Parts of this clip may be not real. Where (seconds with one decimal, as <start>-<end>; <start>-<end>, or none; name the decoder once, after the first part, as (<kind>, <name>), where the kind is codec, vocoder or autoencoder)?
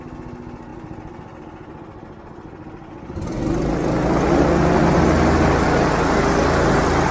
none